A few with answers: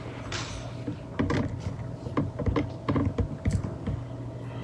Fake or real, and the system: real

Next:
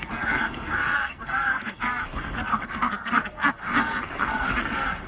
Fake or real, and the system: fake, codec, SNAC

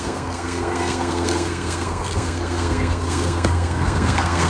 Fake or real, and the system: fake, codec, SNAC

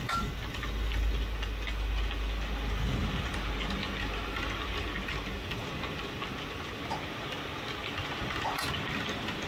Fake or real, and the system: real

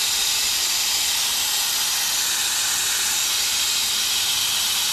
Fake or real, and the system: real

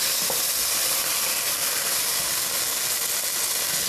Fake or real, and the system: real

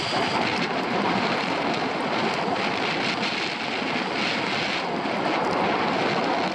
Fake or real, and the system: real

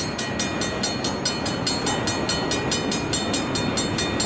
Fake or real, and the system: real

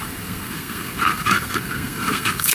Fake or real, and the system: fake, codec, SNAC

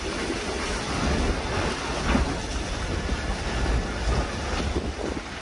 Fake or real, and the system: real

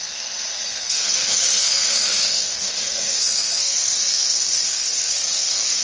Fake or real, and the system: fake, codec, SNAC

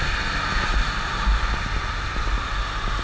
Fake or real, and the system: real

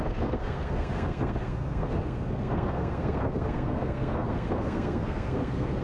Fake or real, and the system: fake, codec, SNAC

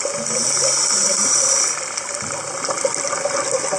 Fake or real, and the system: real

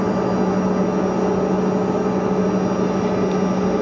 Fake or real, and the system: real